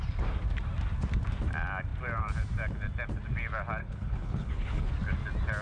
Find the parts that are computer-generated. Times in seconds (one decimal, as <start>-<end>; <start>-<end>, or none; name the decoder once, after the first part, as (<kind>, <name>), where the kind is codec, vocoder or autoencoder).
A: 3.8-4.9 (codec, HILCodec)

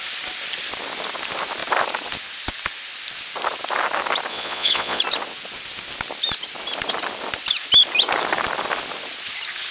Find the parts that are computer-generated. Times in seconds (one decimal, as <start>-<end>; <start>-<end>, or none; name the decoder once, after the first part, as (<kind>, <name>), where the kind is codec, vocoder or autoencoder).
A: 4.3-5.0 (vocoder, Vocos)

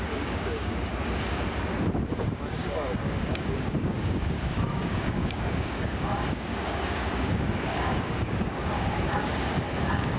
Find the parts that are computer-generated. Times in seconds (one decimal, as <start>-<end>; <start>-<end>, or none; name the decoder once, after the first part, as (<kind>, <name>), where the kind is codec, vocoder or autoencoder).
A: 0.0-0.9 (codec, DAC); 2.1-10.2

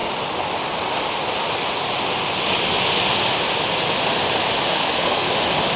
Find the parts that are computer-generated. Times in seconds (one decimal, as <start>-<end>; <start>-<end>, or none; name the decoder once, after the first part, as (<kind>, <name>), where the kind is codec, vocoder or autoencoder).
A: 4.7-5.3 (codec, SNAC)

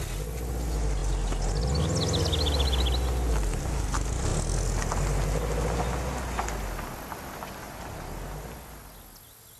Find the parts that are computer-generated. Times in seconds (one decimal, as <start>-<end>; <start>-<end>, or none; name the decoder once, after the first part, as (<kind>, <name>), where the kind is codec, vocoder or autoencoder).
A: none

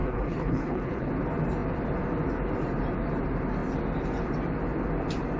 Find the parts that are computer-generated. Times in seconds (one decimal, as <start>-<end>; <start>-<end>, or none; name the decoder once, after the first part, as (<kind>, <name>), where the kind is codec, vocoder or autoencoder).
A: 0.0-1.1 (codec, HILCodec)